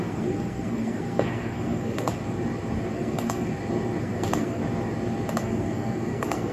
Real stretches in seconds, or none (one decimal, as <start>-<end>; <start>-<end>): 2.2-2.9; 3.5-4.0; 4.6-5.3